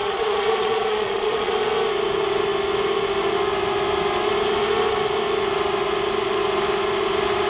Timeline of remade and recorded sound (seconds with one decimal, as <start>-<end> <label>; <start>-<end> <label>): 0.0-1.5 remade; 1.5-7.5 recorded